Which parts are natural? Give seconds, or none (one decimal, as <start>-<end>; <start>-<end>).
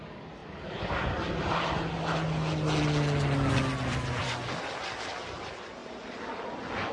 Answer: 0.0-6.9